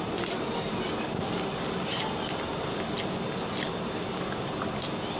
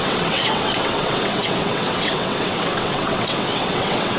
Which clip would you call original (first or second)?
first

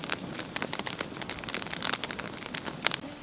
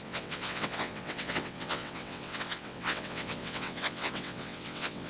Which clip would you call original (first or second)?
first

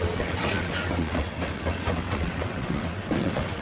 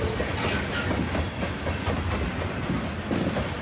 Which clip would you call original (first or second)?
second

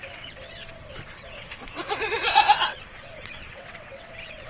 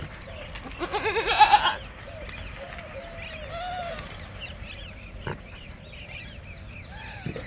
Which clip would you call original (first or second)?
second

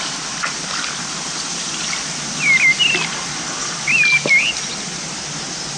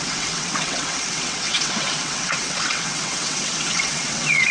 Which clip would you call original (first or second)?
first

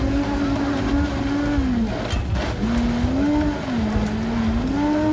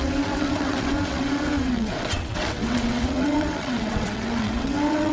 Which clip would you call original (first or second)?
first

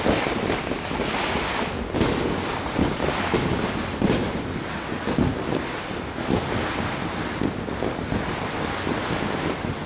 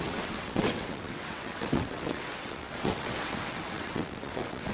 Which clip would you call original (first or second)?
first